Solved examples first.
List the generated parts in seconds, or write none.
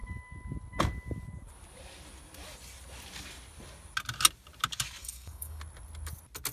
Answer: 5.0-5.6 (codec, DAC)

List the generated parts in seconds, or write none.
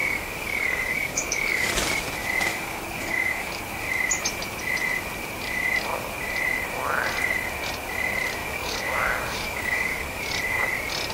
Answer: 0.0-1.7 (codec, DAC); 2.5-3.6; 8.4-10.2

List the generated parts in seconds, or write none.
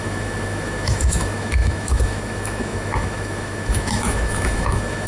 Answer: 0.0-5.1 (autoencoder, DAC-VAE)